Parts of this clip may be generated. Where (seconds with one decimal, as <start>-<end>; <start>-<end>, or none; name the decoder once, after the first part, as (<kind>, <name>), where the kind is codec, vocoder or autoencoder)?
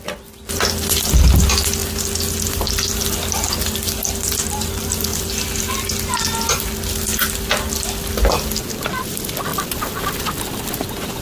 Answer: 9.5-10.2 (vocoder, BigVGAN v2)